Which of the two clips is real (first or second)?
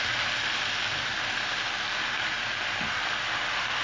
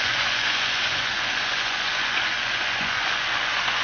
first